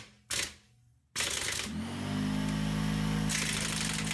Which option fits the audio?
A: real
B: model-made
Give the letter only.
A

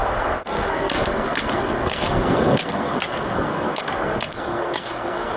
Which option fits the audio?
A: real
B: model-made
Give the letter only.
B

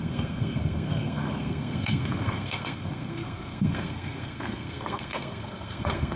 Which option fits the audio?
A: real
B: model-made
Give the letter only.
B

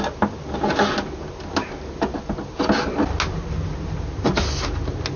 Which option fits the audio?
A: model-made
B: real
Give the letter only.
B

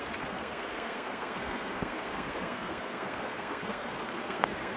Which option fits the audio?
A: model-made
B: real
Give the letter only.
A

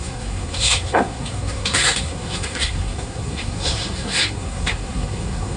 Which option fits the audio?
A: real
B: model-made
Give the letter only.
B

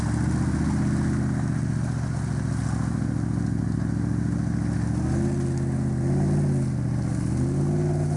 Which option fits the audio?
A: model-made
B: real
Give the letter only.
B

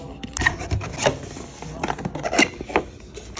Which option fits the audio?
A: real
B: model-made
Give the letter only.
A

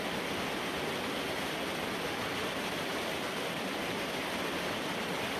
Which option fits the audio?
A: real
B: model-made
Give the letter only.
A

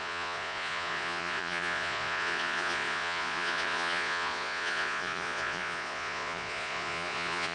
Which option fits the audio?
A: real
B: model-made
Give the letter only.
B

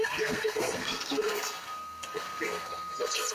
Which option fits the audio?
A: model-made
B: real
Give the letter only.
A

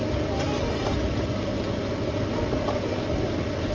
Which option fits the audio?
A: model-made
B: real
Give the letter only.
B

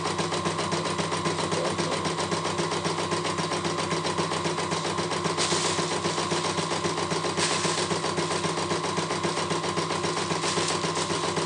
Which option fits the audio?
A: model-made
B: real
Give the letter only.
B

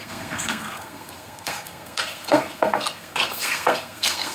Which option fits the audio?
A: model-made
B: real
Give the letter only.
A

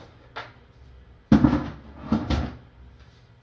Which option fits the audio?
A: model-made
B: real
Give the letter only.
B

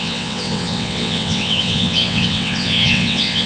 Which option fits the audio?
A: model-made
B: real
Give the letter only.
A